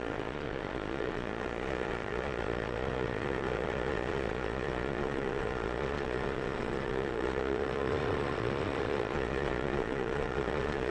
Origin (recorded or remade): remade